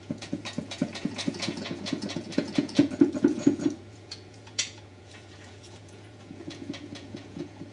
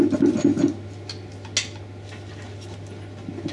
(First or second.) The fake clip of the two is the first